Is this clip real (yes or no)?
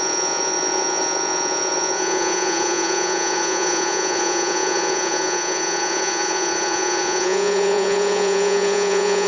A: no